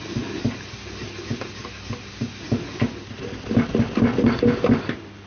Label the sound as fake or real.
real